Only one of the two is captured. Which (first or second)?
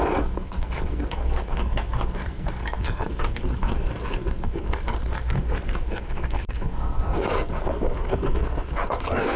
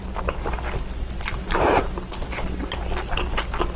second